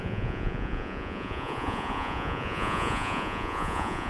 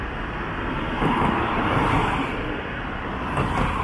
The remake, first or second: first